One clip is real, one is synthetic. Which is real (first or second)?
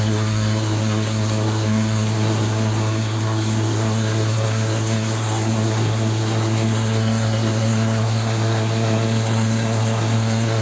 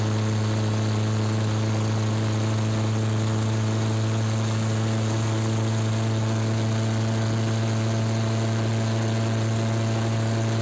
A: second